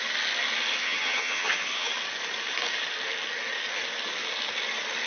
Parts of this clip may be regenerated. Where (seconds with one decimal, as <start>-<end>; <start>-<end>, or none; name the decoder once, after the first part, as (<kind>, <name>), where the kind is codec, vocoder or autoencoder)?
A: 0.8-1.9 (vocoder, HiFi-GAN)